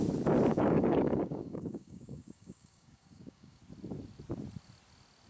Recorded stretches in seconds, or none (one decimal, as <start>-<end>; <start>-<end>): 0.0-0.5; 3.6-5.3